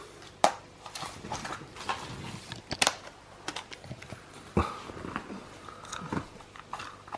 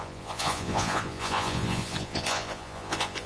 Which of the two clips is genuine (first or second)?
first